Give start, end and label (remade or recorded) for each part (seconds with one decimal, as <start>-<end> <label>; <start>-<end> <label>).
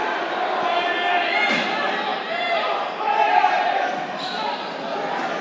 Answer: 0.0-0.8 remade; 0.8-2.1 recorded; 2.1-3.7 remade; 3.7-5.4 recorded